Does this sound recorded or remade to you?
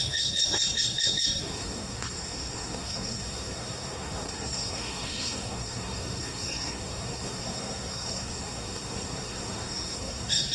remade